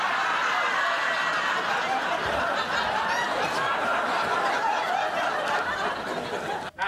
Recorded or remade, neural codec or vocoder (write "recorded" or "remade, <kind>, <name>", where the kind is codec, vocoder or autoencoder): recorded